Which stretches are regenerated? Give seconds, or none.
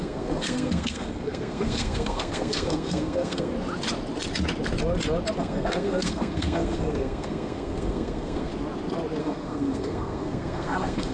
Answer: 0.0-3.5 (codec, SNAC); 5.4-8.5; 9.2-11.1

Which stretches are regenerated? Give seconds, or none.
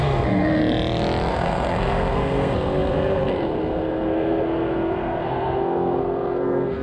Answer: 0.0-0.6 (codec, SNAC); 1.3-6.8